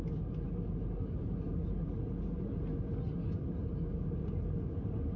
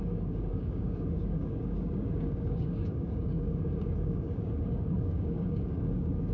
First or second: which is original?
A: first